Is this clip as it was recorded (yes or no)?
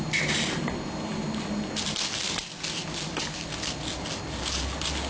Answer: yes